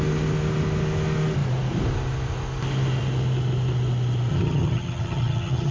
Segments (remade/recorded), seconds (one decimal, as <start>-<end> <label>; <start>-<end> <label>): 0.0-4.3 recorded; 4.3-5.7 remade